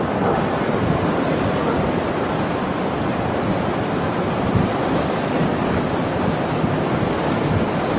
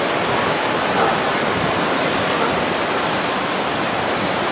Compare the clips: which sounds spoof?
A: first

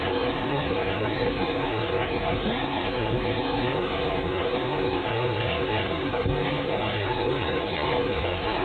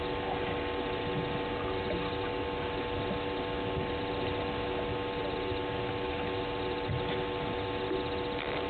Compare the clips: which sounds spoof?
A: first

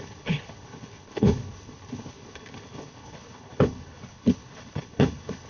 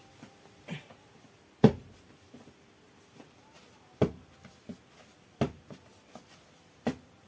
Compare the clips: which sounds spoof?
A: first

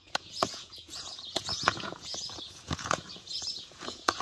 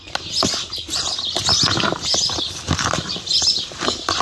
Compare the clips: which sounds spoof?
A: first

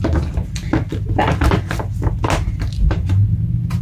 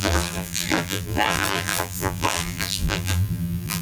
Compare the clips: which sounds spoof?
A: second